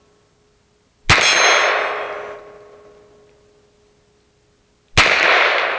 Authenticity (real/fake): real